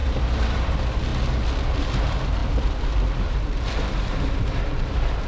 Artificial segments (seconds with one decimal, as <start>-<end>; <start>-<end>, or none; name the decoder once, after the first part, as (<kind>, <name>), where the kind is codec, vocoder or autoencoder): 0.0-1.1 (vocoder, BigVGAN v2); 1.7-5.3

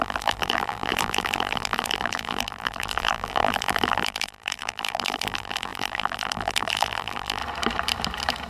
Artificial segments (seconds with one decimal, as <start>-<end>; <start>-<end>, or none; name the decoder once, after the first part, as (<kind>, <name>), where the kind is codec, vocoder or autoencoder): 0.0-7.4 (vocoder, BigVGAN v2)

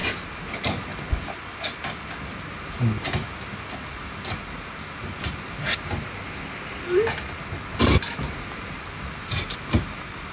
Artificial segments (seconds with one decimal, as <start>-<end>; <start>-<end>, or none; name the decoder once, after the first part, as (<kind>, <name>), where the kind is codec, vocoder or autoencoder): none

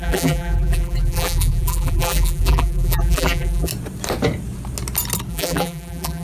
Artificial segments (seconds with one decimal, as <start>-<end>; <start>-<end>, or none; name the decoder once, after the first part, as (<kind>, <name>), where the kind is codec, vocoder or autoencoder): 0.0-3.7 (vocoder, BigVGAN v2); 5.3-6.2

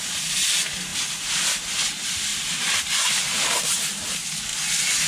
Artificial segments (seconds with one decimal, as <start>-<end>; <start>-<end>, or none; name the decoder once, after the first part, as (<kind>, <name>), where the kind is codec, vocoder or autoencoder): none

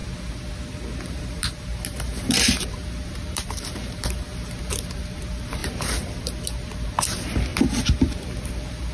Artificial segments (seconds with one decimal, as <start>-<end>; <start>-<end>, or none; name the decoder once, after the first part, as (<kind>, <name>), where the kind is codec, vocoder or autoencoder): 1.1-7.5 (vocoder, BigVGAN v2); 8.5-8.9

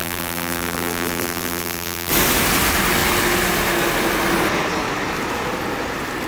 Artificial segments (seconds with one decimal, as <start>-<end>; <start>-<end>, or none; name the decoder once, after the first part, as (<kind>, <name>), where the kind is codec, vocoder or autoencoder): 0.0-2.1 (vocoder, BigVGAN v2)